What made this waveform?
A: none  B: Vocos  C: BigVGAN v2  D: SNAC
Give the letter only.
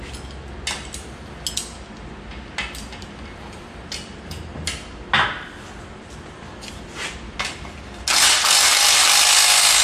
A